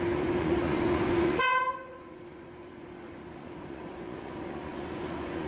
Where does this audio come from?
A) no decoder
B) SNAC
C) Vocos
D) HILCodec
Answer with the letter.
C